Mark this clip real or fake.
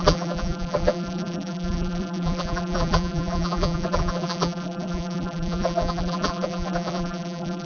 fake